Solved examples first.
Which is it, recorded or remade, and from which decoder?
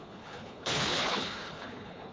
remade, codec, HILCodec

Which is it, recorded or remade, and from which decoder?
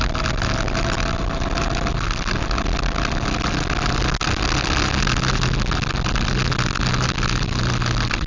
recorded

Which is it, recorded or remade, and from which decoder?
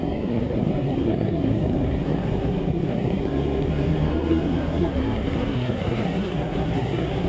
remade, codec, SNAC